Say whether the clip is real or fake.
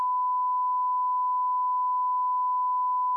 real